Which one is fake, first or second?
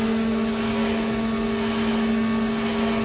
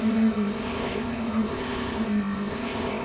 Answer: second